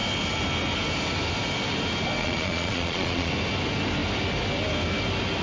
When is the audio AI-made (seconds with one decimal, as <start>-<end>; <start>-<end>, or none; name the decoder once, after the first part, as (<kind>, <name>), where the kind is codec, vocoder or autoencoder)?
2.2-3.3 (vocoder, Vocos)